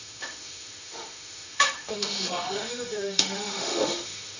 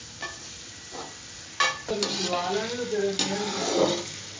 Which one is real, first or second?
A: second